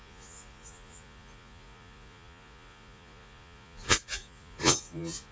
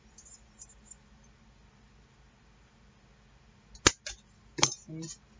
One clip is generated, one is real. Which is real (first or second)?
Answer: second